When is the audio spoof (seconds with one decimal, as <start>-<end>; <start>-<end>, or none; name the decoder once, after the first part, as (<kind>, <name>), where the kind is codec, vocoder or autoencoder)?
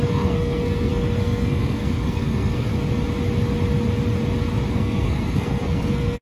0.0-2.7 (codec, SNAC); 4.7-6.2